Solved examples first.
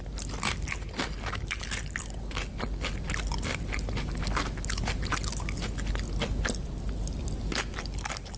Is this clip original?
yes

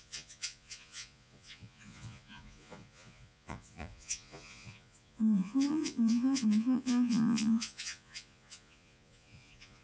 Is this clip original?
no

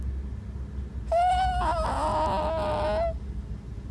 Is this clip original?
yes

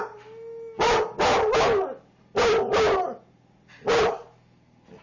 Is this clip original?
yes